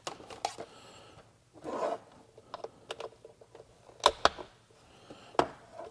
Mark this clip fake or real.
real